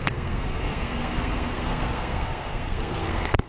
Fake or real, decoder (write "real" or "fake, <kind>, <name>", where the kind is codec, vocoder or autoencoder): fake, codec, SNAC